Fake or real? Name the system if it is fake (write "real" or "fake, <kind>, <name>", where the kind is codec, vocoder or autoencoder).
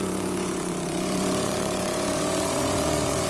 fake, vocoder, Vocos